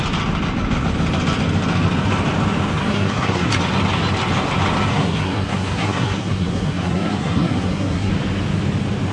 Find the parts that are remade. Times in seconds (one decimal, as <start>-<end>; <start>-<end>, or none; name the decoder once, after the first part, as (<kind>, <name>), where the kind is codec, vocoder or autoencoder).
2.8-3.5 (codec, SNAC); 4.9-8.1